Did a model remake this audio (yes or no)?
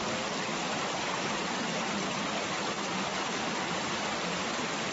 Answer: yes